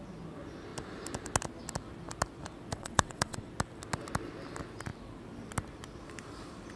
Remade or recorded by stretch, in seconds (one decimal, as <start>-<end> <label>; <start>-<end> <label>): 0.0-2.7 recorded; 2.7-3.5 remade; 3.5-6.8 recorded